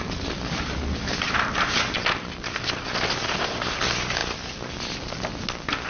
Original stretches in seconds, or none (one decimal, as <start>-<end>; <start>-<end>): 0.0-5.9

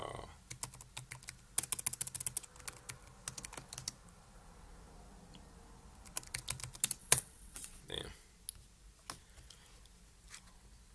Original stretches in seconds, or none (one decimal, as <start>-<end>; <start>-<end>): 0.0-7.0; 7.8-10.9

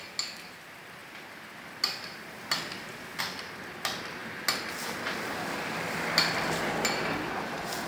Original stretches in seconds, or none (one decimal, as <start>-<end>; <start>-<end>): 0.0-7.9

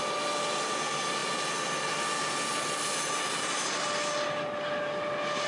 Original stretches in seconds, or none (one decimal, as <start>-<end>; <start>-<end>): 0.0-5.5

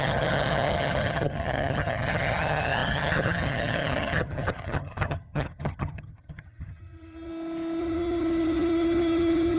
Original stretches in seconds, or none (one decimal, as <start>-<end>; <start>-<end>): 7.3-7.8